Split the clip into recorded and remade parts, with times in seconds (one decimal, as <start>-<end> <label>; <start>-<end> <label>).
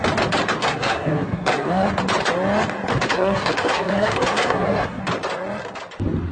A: 0.0-0.6 recorded; 0.6-1.9 remade; 1.9-2.9 recorded; 2.9-5.0 remade; 5.0-6.3 recorded